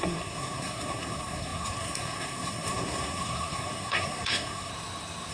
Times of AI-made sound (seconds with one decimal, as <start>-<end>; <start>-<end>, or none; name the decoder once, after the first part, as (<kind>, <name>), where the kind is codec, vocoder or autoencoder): 0.0-4.7 (codec, SNAC)